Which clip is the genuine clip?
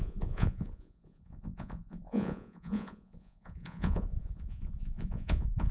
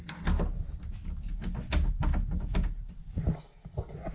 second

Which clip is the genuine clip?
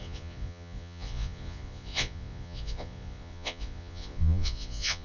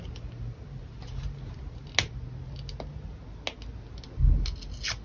second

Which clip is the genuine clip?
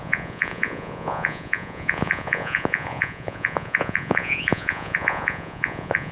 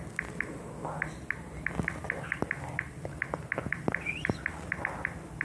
second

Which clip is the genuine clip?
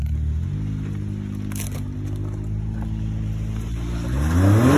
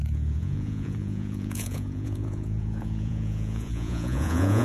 first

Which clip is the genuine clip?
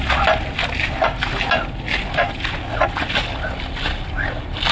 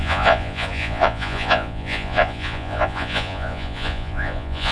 first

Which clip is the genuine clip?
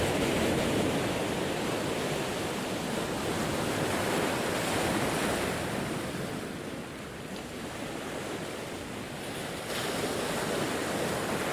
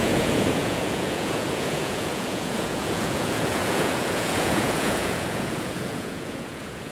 first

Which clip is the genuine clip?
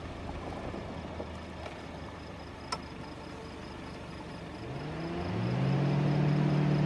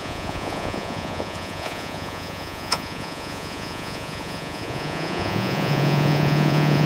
first